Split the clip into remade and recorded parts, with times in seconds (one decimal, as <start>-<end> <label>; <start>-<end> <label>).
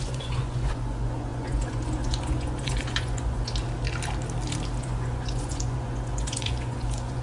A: 0.0-3.5 remade; 3.5-4.8 recorded; 4.8-7.2 remade